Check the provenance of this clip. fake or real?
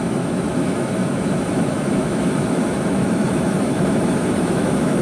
fake